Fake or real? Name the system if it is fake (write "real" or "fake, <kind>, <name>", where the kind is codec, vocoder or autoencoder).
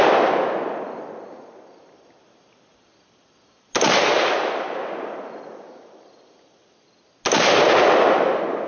real